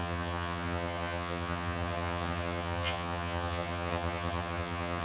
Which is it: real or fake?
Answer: fake